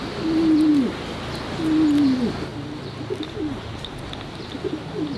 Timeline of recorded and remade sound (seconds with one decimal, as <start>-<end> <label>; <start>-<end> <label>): 0.0-5.2 recorded